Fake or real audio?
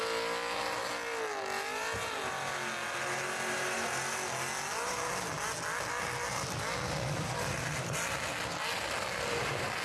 real